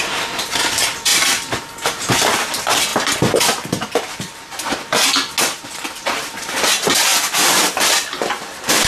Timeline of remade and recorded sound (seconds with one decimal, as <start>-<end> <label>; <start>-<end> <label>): 0.0-2.9 remade; 2.9-5.4 recorded; 5.4-8.9 remade